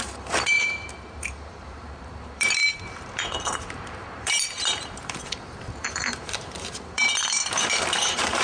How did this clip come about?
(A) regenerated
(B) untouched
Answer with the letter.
A